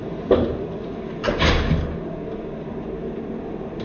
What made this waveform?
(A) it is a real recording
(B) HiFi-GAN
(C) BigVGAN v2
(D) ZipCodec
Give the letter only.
A